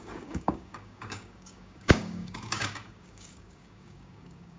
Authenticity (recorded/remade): remade